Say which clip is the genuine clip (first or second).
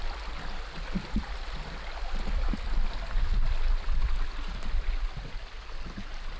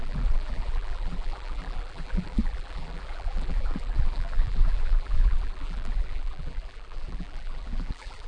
first